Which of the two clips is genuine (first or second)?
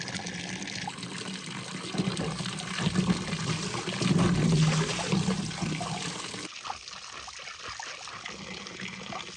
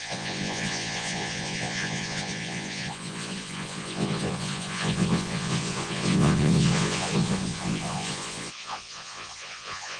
first